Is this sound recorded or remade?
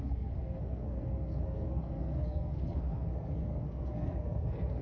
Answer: remade